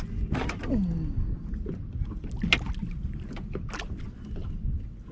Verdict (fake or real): real